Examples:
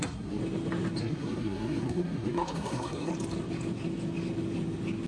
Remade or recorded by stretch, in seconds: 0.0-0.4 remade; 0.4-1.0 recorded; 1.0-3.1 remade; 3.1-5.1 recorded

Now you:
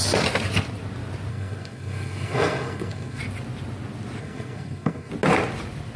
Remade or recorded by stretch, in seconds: 0.0-1.3 recorded; 1.3-3.2 remade; 3.2-4.2 recorded; 4.2-5.1 remade; 5.1-6.0 recorded

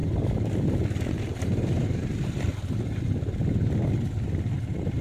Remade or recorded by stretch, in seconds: 0.0-5.0 recorded

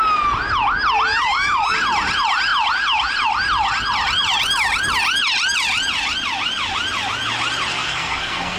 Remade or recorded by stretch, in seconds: 0.0-7.7 recorded; 7.7-8.6 remade

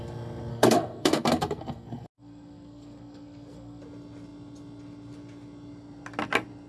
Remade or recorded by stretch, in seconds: 0.0-0.5 recorded; 0.5-3.8 remade; 3.8-6.7 recorded

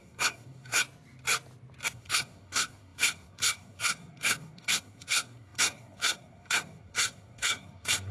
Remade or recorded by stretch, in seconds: 0.0-0.8 remade; 0.8-1.9 recorded; 1.9-8.1 remade

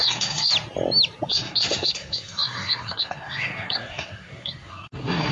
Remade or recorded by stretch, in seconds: 0.0-0.5 remade; 0.5-1.3 recorded; 1.3-5.3 remade

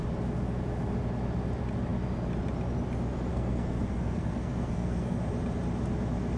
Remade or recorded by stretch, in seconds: 0.0-3.3 recorded; 3.3-5.2 remade; 5.2-6.4 recorded